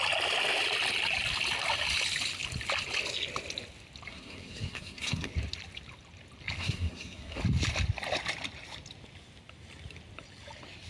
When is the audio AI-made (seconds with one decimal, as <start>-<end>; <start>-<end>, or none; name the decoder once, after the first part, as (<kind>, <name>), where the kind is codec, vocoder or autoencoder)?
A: 4.1-5.3 (codec, SNAC); 6.6-7.4